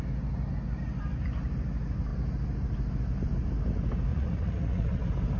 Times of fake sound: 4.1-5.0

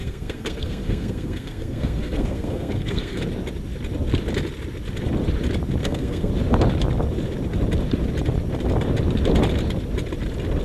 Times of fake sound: 0.0-3.2; 5.8-6.3